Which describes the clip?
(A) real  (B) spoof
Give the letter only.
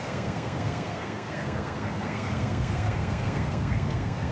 B